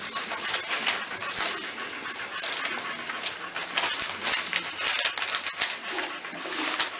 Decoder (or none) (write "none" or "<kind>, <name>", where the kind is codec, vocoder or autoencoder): none